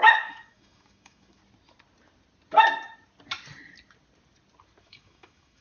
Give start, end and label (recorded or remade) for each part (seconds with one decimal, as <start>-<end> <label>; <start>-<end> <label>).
0.0-1.4 remade; 1.4-4.8 recorded; 4.8-5.6 remade